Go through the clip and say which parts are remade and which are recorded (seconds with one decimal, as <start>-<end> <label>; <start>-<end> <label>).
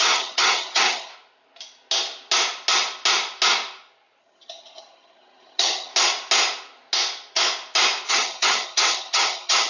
0.0-1.1 remade; 1.1-4.2 recorded; 4.2-5.9 remade; 5.9-8.1 recorded; 8.1-9.7 remade